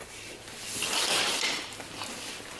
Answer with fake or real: real